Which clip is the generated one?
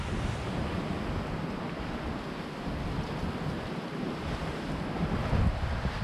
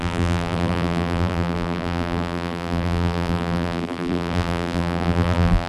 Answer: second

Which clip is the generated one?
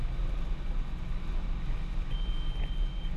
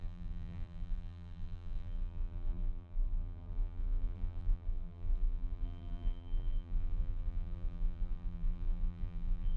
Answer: second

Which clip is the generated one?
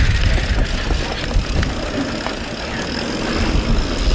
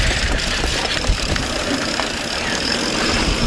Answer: second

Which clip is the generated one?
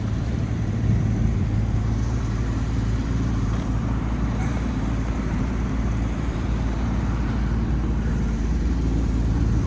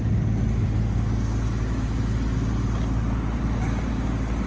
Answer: first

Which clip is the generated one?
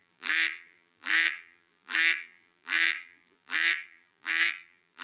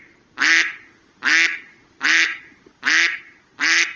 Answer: first